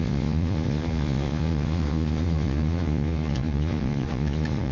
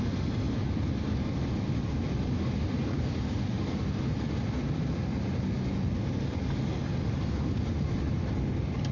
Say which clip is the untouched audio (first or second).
second